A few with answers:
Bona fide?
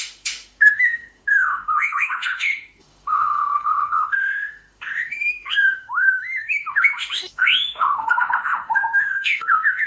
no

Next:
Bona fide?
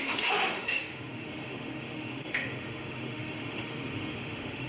no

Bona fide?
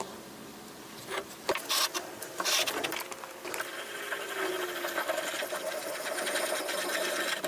yes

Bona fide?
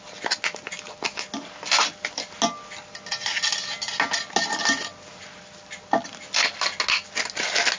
yes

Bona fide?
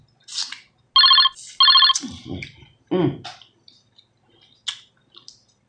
yes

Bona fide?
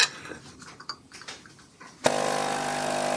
yes